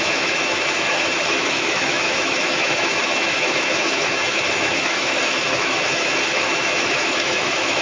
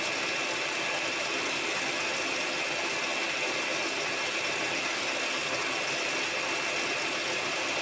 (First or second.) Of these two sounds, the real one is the second